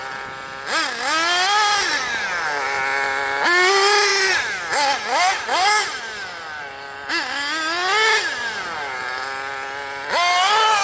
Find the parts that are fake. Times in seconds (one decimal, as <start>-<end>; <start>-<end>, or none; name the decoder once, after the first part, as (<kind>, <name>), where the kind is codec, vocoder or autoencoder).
none